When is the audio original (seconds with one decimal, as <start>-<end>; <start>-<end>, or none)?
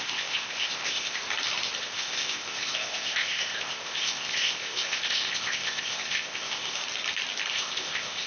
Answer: 1.2-1.8; 6.8-7.5